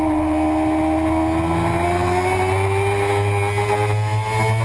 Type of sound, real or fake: real